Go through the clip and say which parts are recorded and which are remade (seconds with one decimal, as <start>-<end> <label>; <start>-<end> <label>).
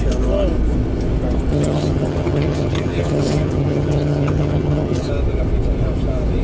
0.0-1.5 recorded; 1.5-5.1 remade; 5.1-6.4 recorded